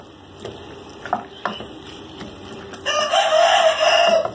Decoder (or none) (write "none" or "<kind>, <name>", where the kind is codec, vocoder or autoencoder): none